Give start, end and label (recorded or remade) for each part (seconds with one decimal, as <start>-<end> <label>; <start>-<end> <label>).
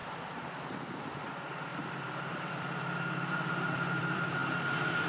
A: 0.0-1.2 recorded; 1.2-4.4 remade; 4.4-5.1 recorded